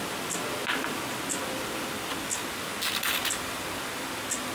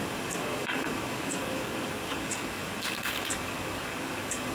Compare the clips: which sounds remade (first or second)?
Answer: second